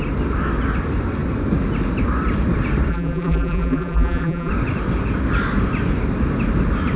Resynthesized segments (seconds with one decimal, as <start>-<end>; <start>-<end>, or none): 2.9-4.5

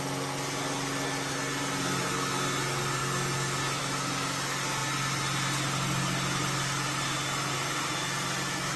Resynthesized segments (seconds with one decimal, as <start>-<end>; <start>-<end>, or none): none